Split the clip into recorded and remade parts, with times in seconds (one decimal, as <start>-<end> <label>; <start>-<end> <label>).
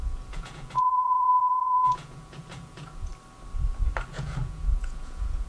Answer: 0.0-3.1 remade; 3.1-4.1 recorded; 4.1-5.5 remade